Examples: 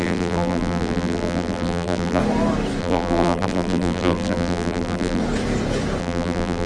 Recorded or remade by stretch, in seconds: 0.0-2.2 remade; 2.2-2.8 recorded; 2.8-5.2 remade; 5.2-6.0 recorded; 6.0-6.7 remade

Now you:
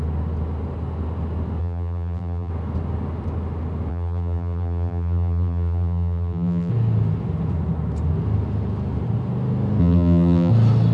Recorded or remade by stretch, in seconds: 0.0-1.6 recorded; 1.6-2.5 remade; 2.5-3.9 recorded; 3.9-6.7 remade; 6.7-9.8 recorded; 9.8-10.5 remade; 10.5-10.9 recorded

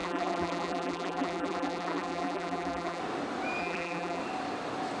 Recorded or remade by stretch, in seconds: 0.0-3.0 remade; 3.0-3.6 recorded; 3.6-4.2 remade; 4.2-5.0 recorded

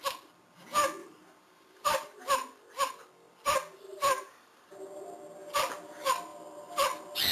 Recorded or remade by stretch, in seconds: 0.0-1.0 recorded; 1.0-2.2 remade; 2.2-3.9 recorded; 3.9-4.7 remade; 4.7-7.3 recorded

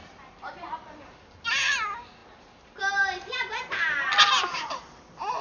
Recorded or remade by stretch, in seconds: 0.0-0.9 remade; 0.9-5.4 recorded